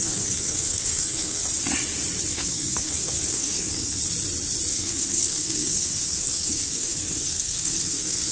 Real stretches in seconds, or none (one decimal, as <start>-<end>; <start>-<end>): 1.4-2.3; 4.0-4.7